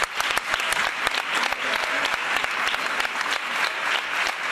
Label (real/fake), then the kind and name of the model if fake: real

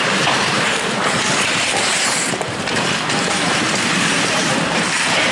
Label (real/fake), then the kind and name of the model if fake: fake, vocoder, BigVGAN v2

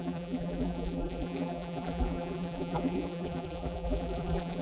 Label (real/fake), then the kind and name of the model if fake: fake, vocoder, BigVGAN v2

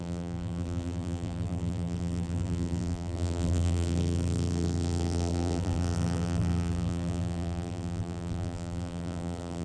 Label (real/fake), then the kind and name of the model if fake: fake, vocoder, BigVGAN v2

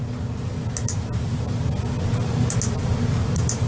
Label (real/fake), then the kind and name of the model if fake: real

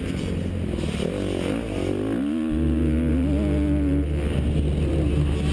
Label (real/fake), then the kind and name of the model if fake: real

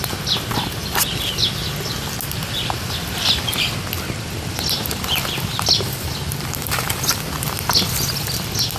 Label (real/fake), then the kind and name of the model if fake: real